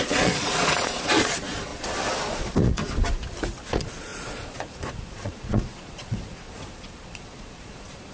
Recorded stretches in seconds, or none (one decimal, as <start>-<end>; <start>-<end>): 1.7-2.3; 2.8-3.6